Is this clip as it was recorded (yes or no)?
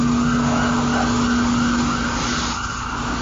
yes